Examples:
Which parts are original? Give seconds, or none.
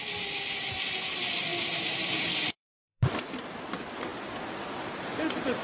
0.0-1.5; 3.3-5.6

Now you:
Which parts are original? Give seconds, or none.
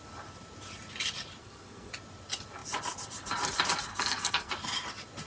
0.0-1.4; 1.9-3.9; 4.5-5.3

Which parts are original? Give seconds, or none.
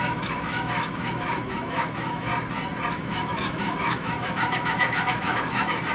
2.3-2.9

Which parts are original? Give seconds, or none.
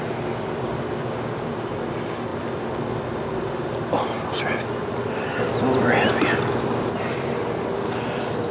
0.0-8.5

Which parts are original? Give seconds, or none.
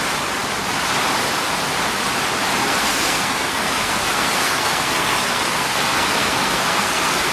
0.0-2.6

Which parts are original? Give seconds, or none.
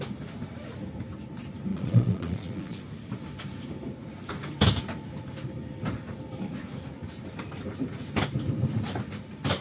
0.0-1.7; 2.8-9.6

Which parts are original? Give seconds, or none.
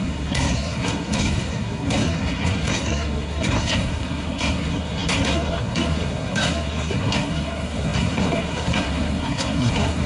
none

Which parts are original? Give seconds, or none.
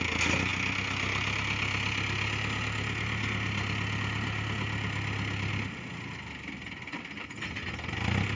0.0-8.4